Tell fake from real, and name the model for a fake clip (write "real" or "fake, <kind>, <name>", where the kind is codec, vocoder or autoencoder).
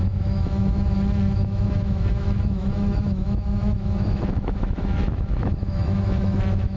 fake, autoencoder, DAC-VAE